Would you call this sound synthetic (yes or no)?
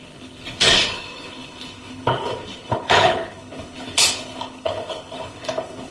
yes